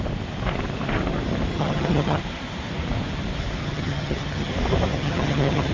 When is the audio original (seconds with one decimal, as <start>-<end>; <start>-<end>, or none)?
0.0-1.5; 2.2-3.6; 4.5-4.9